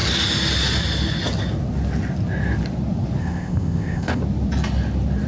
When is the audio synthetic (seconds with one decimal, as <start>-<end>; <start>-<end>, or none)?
3.2-4.2